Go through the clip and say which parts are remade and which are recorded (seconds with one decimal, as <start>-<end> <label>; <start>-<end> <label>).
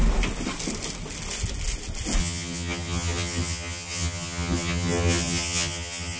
0.0-2.2 recorded; 2.2-6.2 remade